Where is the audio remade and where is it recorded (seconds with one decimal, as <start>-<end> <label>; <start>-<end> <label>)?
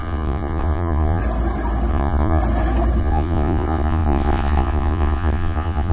0.0-1.2 remade; 1.2-1.9 recorded; 1.9-2.4 remade; 2.4-3.0 recorded; 3.0-5.9 remade